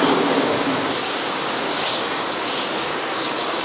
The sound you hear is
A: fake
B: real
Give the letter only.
A